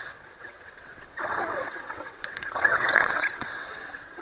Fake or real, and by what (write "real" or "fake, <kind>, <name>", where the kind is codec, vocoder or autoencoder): fake, vocoder, WaveNeXt